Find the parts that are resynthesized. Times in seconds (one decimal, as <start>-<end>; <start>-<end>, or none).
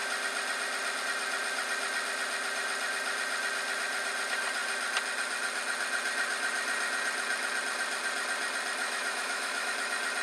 8.8-9.7